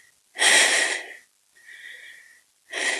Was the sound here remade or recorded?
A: recorded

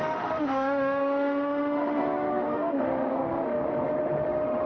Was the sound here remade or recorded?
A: remade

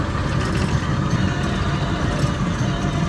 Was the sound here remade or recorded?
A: recorded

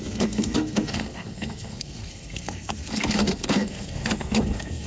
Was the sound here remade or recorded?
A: remade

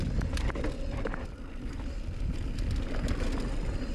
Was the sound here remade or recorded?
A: recorded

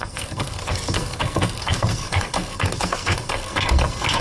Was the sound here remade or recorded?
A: remade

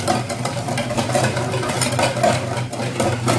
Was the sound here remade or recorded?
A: recorded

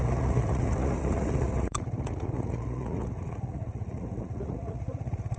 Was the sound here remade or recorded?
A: remade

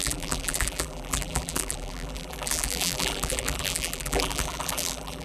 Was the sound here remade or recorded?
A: remade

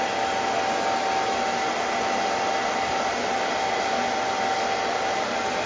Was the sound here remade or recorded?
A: recorded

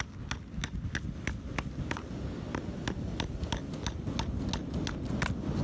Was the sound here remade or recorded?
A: recorded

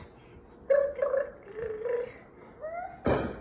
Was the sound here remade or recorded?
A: recorded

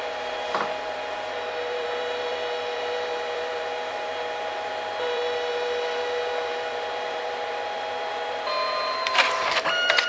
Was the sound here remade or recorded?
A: remade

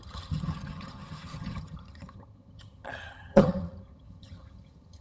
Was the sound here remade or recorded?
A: remade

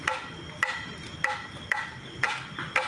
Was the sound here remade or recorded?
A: recorded